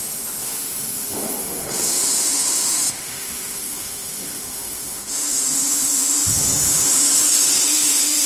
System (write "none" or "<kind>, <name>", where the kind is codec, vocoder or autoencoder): autoencoder, DAC-VAE